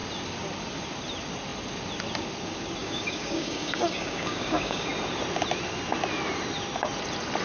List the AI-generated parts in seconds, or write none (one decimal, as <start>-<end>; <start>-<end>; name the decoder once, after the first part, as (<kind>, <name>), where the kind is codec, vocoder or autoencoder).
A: 2.8-4.9 (codec, DAC)